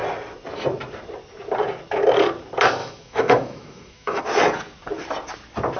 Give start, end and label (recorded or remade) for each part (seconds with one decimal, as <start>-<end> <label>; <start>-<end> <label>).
0.0-2.8 recorded; 2.8-4.2 remade; 4.2-5.8 recorded